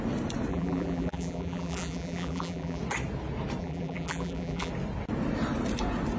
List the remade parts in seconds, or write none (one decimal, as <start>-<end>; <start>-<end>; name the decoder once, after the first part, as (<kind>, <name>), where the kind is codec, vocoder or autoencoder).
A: 0.5-2.8 (vocoder, BigVGAN v2); 3.6-4.7